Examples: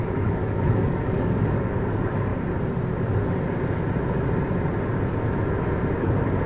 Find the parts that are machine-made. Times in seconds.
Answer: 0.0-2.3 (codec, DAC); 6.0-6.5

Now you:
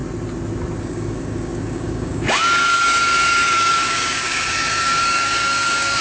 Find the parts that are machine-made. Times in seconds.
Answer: 0.8-6.0 (codec, DAC)

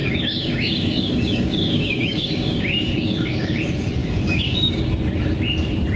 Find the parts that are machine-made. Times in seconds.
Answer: 0.0-3.6 (codec, DAC); 4.0-4.9

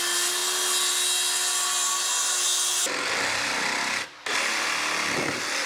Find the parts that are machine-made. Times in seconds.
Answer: none